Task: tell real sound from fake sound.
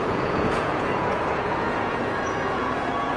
fake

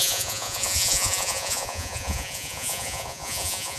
fake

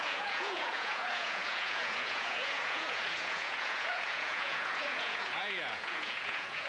fake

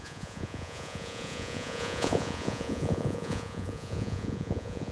fake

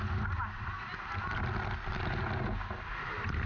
real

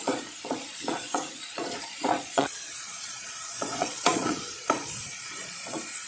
fake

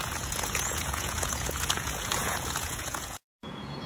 fake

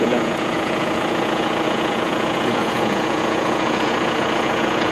fake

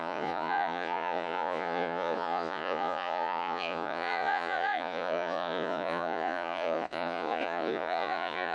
fake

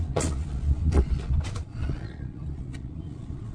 fake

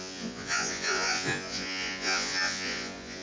fake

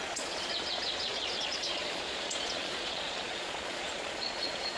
fake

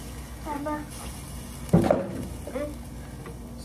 real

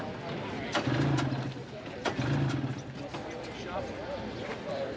real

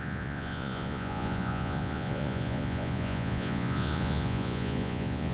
fake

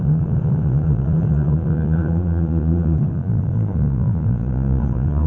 fake